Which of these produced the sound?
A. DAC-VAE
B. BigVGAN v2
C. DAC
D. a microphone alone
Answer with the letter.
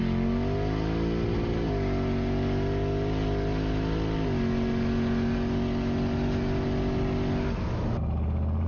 D